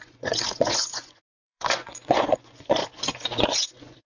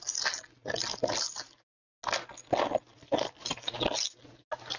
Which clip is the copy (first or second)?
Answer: first